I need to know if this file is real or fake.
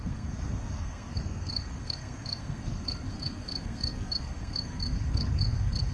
fake